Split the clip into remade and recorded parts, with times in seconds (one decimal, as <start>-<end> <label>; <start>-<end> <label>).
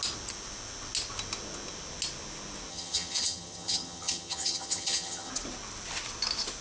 0.0-2.7 recorded; 2.7-5.3 remade; 5.3-6.6 recorded